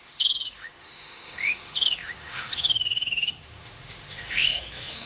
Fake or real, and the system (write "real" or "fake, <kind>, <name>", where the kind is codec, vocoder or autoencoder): fake, autoencoder, DAC-VAE